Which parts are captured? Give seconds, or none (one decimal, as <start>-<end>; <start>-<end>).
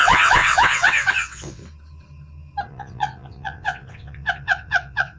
1.6-2.7